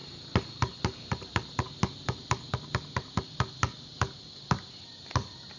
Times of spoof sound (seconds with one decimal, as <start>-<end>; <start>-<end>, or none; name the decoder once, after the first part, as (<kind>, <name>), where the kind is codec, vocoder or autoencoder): none